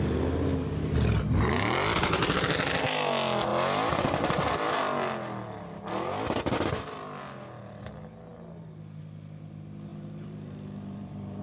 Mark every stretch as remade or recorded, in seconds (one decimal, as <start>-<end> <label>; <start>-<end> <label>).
0.0-3.5 recorded; 3.5-4.8 remade; 4.8-9.9 recorded; 9.9-11.4 remade